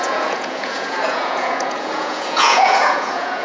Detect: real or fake fake